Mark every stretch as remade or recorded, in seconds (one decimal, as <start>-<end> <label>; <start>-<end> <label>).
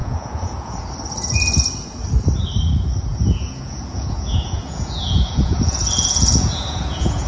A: 0.0-0.9 remade; 0.9-3.1 recorded; 3.1-7.3 remade